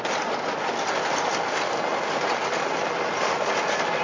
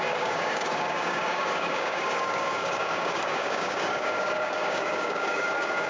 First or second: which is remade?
second